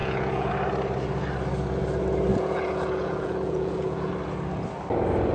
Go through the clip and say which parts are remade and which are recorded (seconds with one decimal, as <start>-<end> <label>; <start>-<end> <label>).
0.0-0.5 remade; 0.5-2.3 recorded; 2.3-4.1 remade; 4.1-5.3 recorded